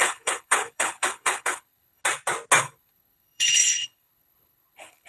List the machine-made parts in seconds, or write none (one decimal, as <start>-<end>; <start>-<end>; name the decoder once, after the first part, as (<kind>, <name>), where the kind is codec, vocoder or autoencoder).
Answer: 0.0-2.0 (codec, HILCodec); 2.6-5.1